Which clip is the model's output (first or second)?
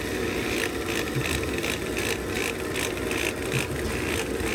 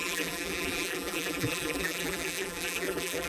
second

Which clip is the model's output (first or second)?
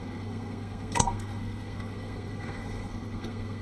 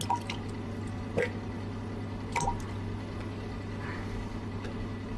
first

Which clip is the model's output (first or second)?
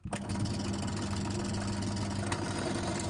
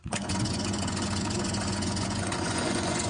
second